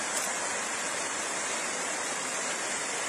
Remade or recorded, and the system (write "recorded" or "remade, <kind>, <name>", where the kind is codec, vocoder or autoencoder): recorded